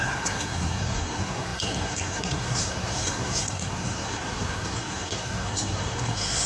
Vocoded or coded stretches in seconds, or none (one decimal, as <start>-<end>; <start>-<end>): 0.0-6.5